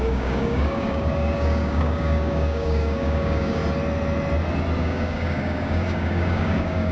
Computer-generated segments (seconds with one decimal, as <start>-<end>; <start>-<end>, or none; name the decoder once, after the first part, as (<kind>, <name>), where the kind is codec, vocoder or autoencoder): 0.0-3.6 (codec, DAC); 4.8-6.9